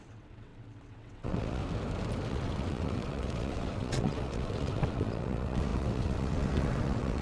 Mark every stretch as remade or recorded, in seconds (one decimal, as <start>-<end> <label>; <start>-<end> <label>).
0.0-1.6 remade; 1.6-2.3 recorded; 2.3-7.2 remade